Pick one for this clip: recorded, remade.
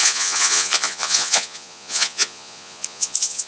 remade